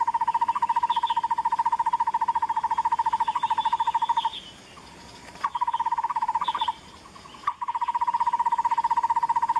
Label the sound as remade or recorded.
recorded